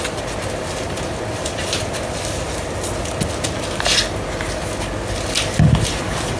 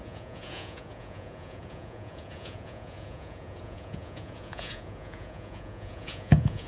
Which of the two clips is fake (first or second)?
second